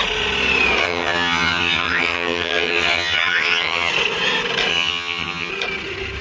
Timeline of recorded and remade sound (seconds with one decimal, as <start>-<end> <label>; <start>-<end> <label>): 0.0-0.8 recorded; 0.8-3.9 remade; 3.9-4.7 recorded; 4.7-5.5 remade; 5.5-6.2 recorded

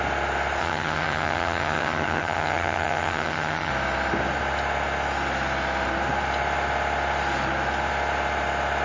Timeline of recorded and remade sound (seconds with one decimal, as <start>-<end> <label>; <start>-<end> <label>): 0.0-0.6 recorded; 0.6-3.7 remade; 3.7-8.8 recorded